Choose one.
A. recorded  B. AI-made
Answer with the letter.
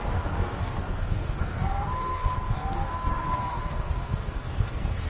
B